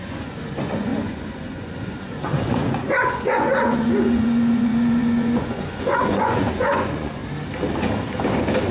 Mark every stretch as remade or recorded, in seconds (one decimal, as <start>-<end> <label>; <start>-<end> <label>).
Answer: 0.0-7.2 remade; 7.2-8.7 recorded